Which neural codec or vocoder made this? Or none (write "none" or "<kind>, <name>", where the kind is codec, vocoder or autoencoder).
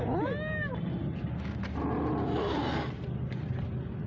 none